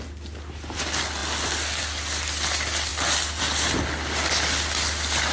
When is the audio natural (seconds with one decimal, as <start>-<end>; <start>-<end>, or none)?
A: 0.0-5.3